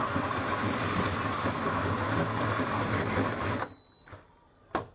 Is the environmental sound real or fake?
real